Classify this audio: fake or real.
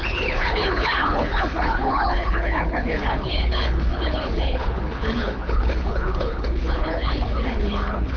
fake